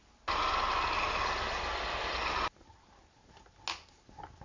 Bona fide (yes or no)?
yes